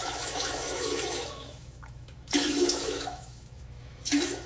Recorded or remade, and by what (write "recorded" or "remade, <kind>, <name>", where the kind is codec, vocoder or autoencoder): remade, autoencoder, DAC-VAE